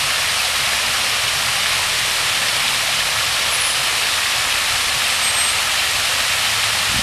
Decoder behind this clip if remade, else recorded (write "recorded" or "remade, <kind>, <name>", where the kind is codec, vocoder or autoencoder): recorded